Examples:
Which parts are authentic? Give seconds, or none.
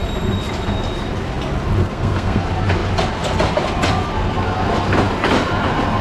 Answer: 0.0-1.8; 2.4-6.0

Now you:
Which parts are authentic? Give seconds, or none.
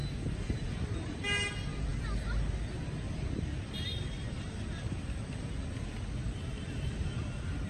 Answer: 0.0-7.7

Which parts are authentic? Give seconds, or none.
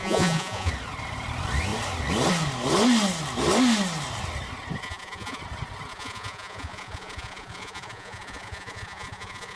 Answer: 0.7-4.8; 5.4-5.9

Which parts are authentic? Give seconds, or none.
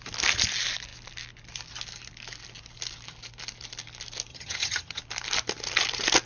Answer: 0.0-4.3; 5.0-6.3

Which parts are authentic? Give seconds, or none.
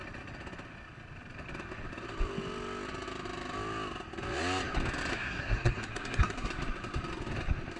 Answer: 0.0-5.1; 6.5-7.8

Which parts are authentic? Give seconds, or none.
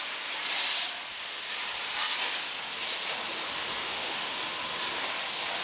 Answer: 0.0-3.8; 4.4-5.6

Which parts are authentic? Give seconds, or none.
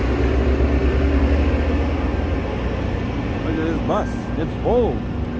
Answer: 0.0-5.4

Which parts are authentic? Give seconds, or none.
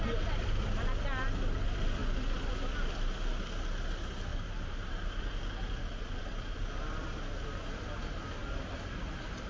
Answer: 0.0-4.3; 5.2-5.8; 6.7-9.5